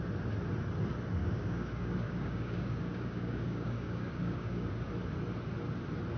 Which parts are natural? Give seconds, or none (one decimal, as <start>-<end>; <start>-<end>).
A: 0.0-1.2; 4.9-6.2